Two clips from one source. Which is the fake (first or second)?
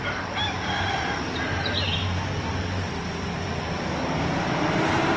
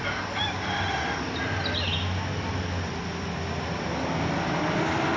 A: first